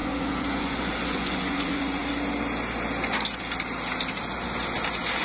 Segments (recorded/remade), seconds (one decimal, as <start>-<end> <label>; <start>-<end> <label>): 0.0-2.0 remade; 2.0-5.2 recorded